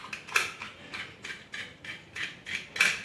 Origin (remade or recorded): recorded